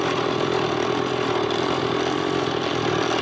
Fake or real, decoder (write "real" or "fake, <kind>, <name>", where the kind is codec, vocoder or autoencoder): real